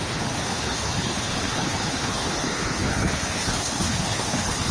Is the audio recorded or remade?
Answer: remade